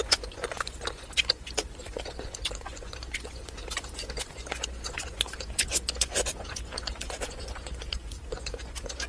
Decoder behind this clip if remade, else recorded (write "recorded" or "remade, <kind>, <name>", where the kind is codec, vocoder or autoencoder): remade, vocoder, Vocos